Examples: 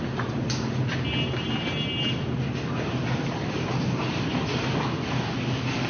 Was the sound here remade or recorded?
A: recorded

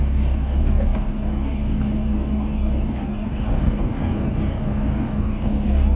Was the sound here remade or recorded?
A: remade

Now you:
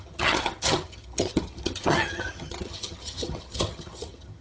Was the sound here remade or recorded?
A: remade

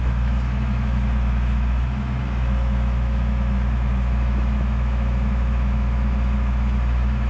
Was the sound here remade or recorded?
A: remade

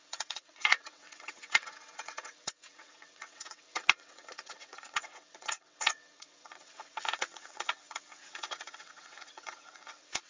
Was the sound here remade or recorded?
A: remade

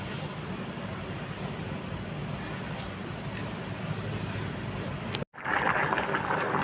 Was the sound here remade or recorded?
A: recorded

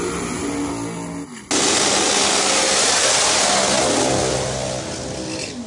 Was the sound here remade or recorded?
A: recorded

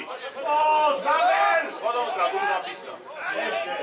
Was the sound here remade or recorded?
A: recorded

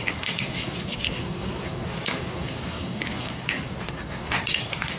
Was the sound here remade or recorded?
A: remade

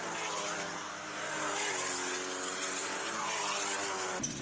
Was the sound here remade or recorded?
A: recorded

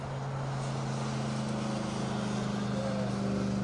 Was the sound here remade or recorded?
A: recorded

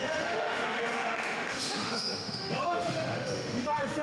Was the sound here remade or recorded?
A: remade